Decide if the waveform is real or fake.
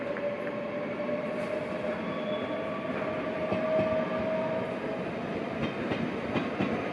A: real